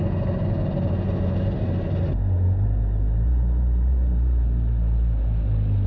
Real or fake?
real